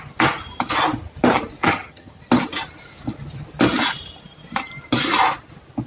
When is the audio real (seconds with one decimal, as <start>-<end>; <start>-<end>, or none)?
0.0-1.6; 2.2-5.9